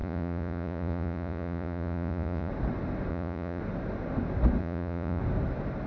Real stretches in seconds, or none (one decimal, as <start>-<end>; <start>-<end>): 2.5-3.1; 3.6-4.6; 5.2-5.9